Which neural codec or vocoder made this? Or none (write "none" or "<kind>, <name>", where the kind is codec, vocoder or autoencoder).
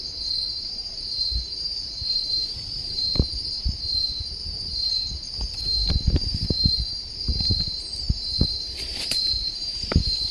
vocoder, BigVGAN v2